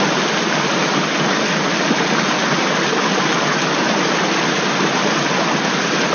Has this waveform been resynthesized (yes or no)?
no